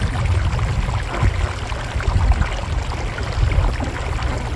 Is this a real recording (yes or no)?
yes